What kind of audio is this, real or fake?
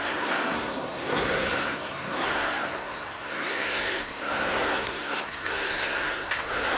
fake